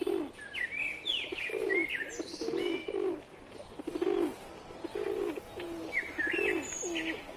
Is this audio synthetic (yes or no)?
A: no